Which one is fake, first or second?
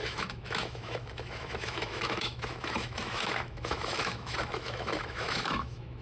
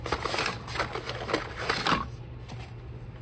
first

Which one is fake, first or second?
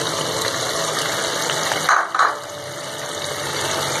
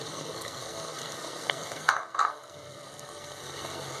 second